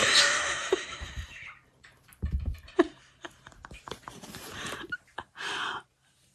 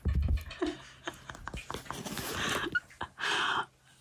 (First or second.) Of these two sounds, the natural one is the second